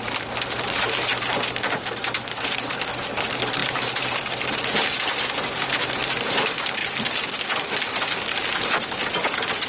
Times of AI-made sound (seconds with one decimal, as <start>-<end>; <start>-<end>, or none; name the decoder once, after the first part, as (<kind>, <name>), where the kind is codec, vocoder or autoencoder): 0.0-6.8 (vocoder, BigVGAN v2); 8.3-9.7